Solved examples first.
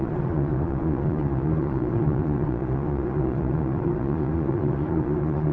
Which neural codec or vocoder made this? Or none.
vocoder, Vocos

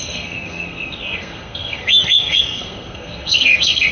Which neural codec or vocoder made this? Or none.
codec, SNAC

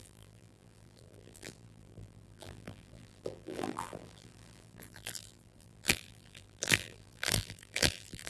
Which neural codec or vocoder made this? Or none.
vocoder, BigVGAN v2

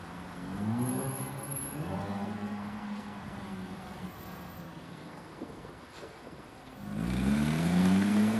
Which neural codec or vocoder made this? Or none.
codec, SNAC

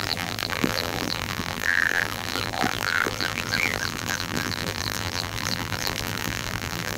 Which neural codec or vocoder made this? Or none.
vocoder, BigVGAN v2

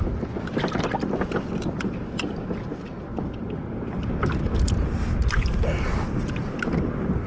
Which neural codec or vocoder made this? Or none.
none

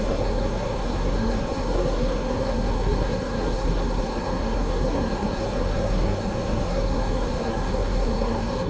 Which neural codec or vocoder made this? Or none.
codec, SNAC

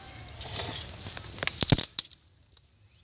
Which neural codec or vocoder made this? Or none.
none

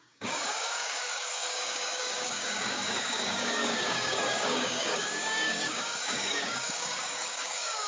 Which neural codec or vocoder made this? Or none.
codec, DAC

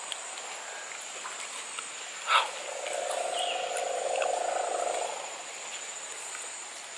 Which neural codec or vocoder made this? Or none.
none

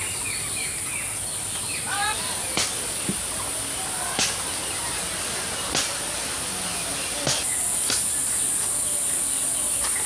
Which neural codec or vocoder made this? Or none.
none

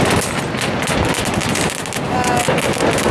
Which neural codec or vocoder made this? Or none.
none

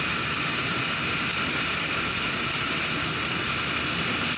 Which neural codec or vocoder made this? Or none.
none